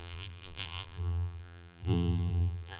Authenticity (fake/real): fake